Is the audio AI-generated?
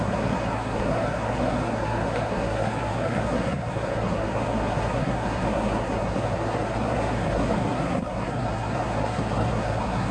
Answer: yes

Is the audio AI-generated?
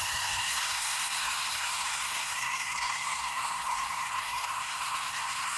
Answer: yes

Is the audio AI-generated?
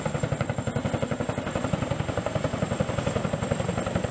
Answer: no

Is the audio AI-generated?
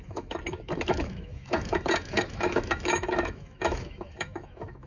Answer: yes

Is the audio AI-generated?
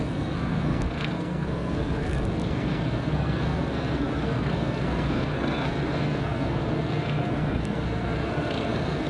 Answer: yes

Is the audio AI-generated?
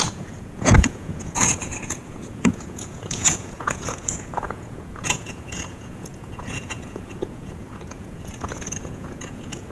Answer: yes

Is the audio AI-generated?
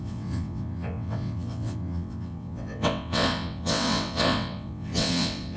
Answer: yes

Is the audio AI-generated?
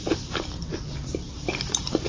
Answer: no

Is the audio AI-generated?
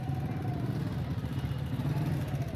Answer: no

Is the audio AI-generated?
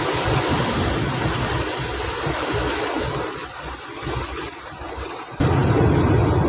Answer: no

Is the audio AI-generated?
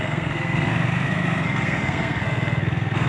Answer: yes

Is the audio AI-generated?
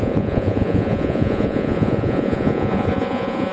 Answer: yes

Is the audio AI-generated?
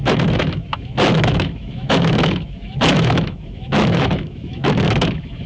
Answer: yes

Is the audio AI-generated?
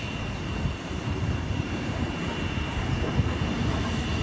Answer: yes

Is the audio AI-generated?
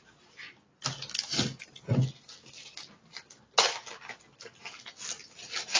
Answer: no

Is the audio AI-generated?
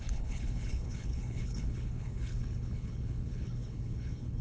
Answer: yes